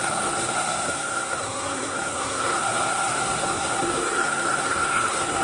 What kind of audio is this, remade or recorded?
remade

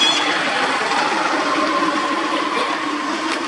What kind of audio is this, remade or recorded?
recorded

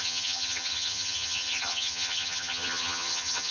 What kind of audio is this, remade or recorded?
remade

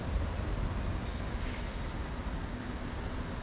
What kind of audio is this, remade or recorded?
recorded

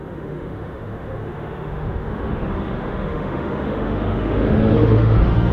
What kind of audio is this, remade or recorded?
remade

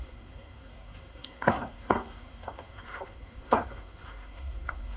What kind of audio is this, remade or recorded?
remade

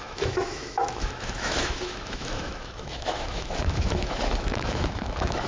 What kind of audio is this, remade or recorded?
remade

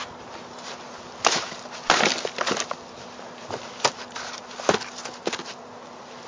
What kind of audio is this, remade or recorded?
recorded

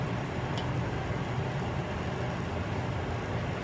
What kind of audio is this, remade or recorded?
recorded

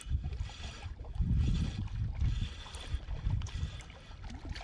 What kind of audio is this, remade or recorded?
recorded